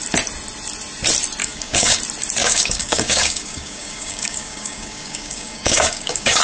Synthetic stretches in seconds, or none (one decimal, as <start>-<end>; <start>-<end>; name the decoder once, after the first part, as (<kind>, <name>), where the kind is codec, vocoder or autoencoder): 1.4-2.0 (codec, DAC); 2.4-6.4